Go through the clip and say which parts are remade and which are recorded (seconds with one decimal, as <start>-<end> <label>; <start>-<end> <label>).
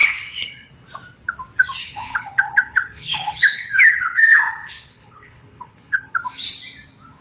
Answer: 0.0-0.7 remade; 0.7-1.8 recorded; 1.8-6.1 remade; 6.1-7.2 recorded